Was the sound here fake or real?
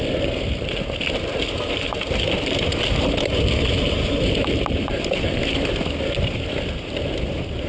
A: real